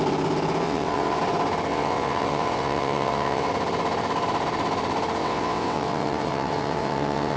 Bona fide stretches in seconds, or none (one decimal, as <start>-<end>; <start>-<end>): 0.0-0.6; 1.2-1.7; 3.5-5.2